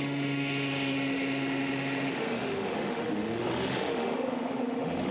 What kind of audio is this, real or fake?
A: fake